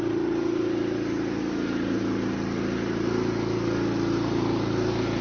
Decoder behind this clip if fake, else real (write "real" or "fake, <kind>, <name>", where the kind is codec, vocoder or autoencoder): real